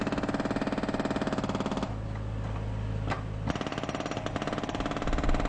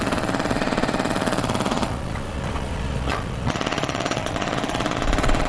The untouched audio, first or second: first